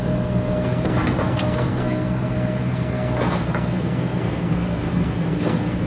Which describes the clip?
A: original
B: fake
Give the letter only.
B